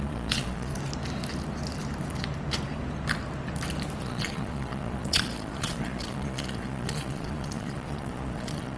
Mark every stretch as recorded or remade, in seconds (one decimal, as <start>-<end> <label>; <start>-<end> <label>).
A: 0.0-0.7 remade; 0.7-4.0 recorded; 4.0-8.8 remade